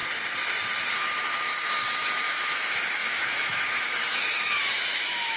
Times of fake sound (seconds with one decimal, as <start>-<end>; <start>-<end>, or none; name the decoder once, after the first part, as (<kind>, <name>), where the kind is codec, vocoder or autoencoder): 0.9-5.4 (autoencoder, DAC-VAE)